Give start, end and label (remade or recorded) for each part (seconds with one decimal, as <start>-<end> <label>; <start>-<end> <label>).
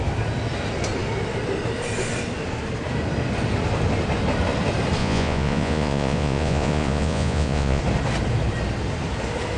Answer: 0.0-5.0 recorded; 5.0-7.8 remade; 7.8-9.6 recorded